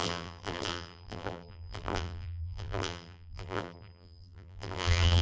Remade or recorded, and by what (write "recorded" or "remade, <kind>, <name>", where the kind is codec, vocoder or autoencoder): remade, vocoder, BigVGAN v2